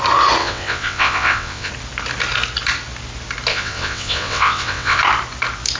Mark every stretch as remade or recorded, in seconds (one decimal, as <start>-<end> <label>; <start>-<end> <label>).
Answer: 0.0-0.4 recorded; 0.4-1.7 remade; 1.7-3.5 recorded; 3.5-5.0 remade; 5.0-5.8 recorded